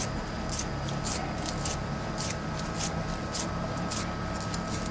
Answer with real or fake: real